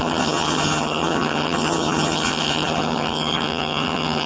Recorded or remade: remade